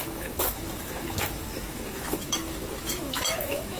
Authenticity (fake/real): fake